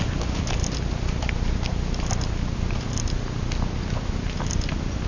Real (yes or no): yes